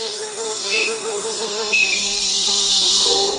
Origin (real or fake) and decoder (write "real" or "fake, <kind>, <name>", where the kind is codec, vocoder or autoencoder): fake, codec, SNAC